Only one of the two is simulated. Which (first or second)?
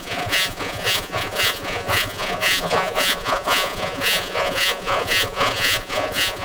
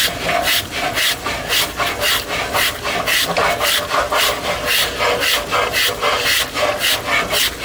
first